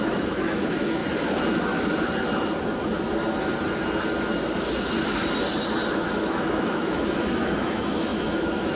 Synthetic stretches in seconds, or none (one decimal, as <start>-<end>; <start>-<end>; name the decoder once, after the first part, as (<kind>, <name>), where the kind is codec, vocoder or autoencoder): 0.0-1.0 (autoencoder, DAC-VAE); 5.9-8.8